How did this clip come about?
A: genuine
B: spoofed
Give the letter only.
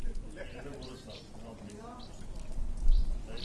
A